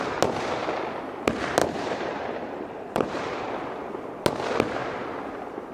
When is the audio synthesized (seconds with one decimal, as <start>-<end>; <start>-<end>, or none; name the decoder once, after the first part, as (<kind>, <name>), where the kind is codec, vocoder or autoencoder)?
1.6-3.5 (vocoder, BigVGAN v2)